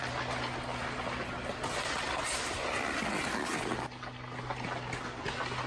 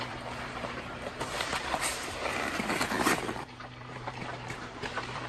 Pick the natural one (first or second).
first